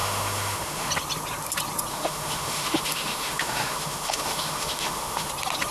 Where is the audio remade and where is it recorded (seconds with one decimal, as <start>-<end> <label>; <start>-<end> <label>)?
0.0-0.9 remade; 0.9-1.9 recorded; 1.9-5.3 remade; 5.3-5.7 recorded